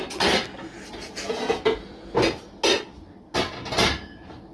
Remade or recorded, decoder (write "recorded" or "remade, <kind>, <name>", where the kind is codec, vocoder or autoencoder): recorded